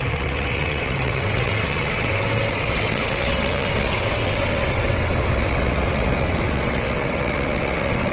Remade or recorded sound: remade